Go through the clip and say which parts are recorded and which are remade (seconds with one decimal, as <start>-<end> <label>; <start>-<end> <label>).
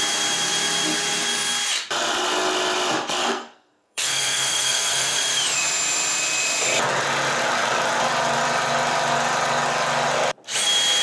0.0-3.2 recorded; 3.2-5.2 remade; 5.2-11.0 recorded